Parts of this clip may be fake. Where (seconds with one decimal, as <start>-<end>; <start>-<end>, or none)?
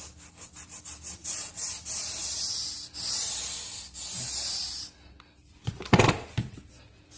none